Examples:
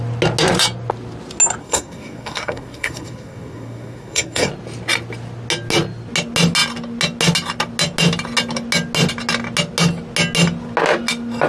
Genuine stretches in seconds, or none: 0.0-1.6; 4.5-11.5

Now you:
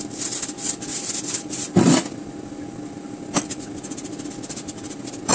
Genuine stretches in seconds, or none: 0.0-5.3

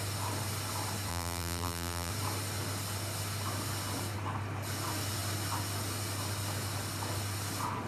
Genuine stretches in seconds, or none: 0.0-1.1; 2.1-7.9

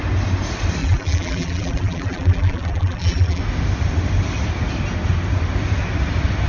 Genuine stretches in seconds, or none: 0.0-0.8; 3.4-6.5

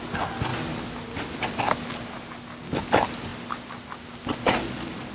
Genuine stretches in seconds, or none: 0.0-5.1